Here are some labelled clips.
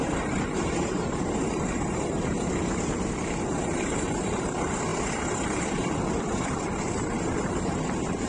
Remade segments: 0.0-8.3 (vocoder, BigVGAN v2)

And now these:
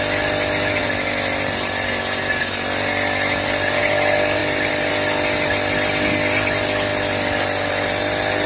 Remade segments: 4.4-4.9 (vocoder, BigVGAN v2)

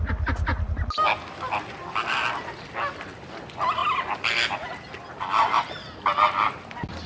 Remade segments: none

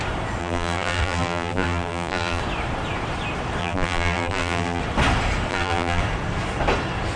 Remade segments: 0.4-2.4 (vocoder, BigVGAN v2); 3.6-4.8; 5.5-6.0

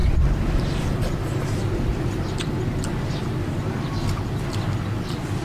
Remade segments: none

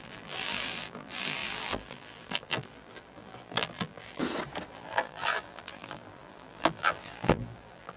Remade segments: 0.0-4.2 (vocoder, BigVGAN v2); 4.7-8.0

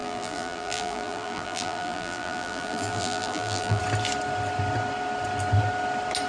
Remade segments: 0.0-3.8 (vocoder, BigVGAN v2)

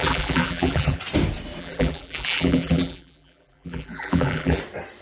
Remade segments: 0.0-1.0 (vocoder, BigVGAN v2); 1.6-4.6